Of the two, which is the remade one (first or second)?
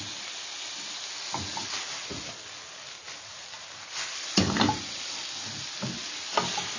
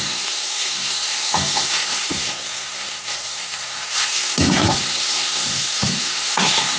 second